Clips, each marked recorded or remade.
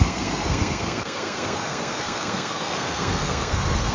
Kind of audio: remade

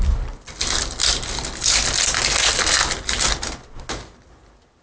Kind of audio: recorded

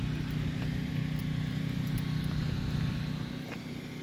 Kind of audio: recorded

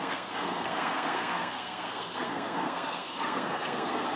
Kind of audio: remade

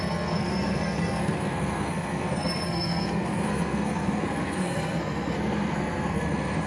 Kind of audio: remade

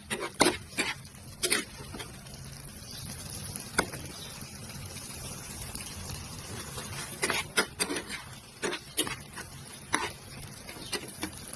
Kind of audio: recorded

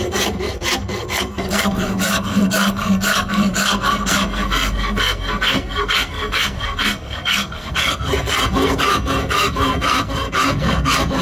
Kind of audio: remade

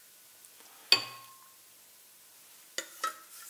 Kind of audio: recorded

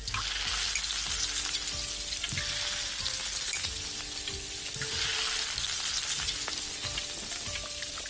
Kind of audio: recorded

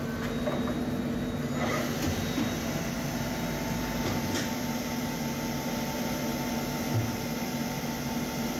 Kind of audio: recorded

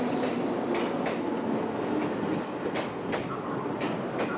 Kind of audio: recorded